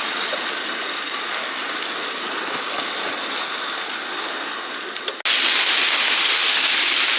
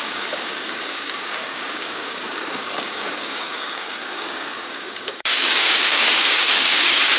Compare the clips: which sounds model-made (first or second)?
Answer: second